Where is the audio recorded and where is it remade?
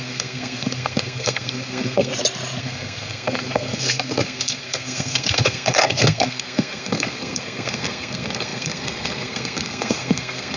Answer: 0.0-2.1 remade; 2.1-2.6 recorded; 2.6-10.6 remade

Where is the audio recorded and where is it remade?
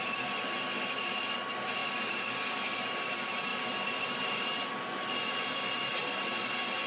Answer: 0.0-6.9 recorded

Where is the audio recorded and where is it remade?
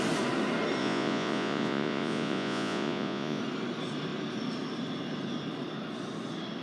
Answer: 0.0-0.8 recorded; 0.8-3.4 remade; 3.4-6.6 recorded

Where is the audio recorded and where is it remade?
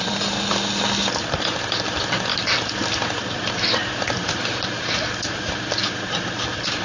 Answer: 0.0-6.8 recorded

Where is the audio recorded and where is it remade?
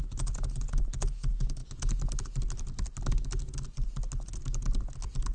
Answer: 0.0-5.3 recorded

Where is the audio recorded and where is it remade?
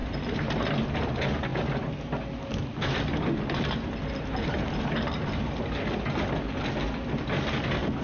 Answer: 0.0-8.0 recorded